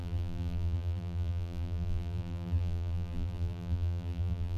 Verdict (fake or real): fake